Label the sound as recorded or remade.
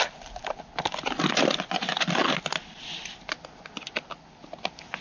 recorded